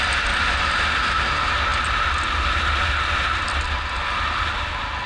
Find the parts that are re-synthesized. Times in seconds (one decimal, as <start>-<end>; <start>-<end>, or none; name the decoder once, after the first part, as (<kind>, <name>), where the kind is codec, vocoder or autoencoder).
none